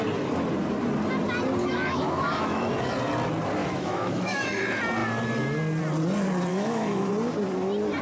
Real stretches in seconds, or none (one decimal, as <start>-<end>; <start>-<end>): 0.0-1.6; 2.7-3.6; 4.6-6.5; 7.1-8.0